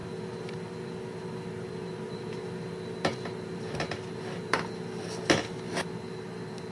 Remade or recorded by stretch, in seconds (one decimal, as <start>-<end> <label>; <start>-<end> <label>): 0.0-6.7 recorded